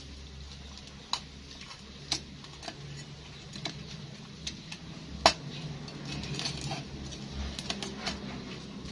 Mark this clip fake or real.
real